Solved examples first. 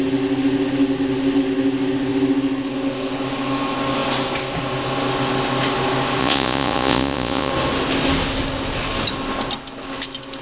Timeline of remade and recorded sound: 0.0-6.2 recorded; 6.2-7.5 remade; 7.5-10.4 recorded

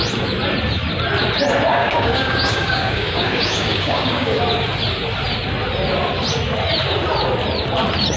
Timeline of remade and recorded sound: 0.0-1.8 recorded; 1.8-4.4 remade; 4.4-8.2 recorded

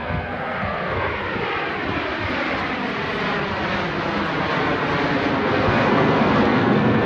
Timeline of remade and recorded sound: 0.0-1.1 remade; 1.1-5.4 recorded; 5.4-7.1 remade

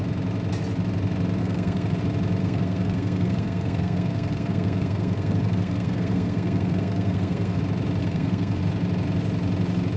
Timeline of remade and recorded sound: 0.0-1.4 recorded; 1.4-2.0 remade; 2.0-2.4 recorded; 2.4-7.6 remade; 7.6-8.0 recorded; 8.0-8.6 remade; 8.6-10.0 recorded